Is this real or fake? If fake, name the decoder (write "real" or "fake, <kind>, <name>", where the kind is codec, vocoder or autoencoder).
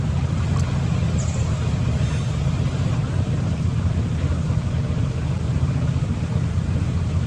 fake, vocoder, BigVGAN v2